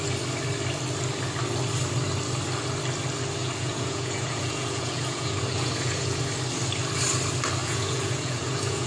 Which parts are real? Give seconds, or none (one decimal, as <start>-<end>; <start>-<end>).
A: 0.0-3.4; 6.2-7.6